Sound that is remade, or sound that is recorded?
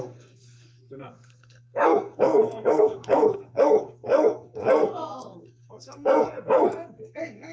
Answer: remade